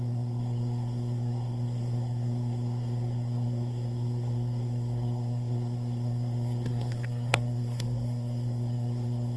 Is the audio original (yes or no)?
no